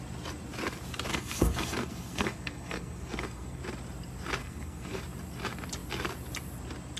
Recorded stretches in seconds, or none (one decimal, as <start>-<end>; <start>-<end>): 0.0-1.1; 3.6-4.4; 5.0-7.0

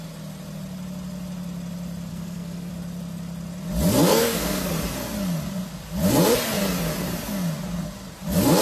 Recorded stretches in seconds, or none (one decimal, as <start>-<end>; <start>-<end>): 0.0-2.1; 2.7-4.1; 4.7-8.6